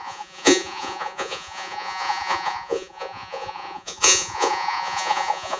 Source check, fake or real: fake